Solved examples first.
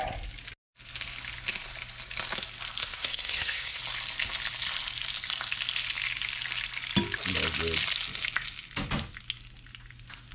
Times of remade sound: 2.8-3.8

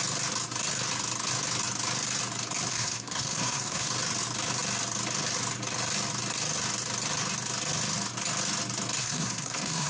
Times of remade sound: 2.7-3.9; 9.0-9.9

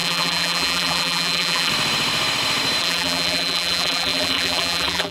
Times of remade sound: 0.0-1.7; 2.8-5.1

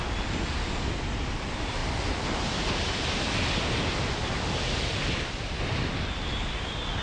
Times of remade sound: none

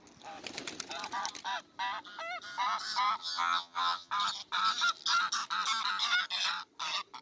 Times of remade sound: 3.2-4.1

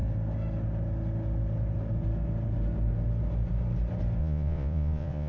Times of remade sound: 4.2-5.3